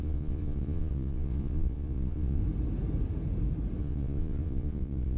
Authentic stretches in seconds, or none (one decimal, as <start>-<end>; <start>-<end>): 2.4-3.8